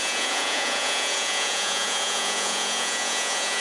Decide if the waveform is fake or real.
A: fake